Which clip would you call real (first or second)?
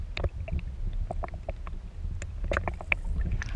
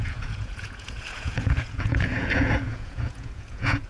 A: first